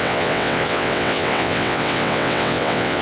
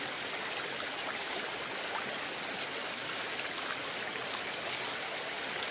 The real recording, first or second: second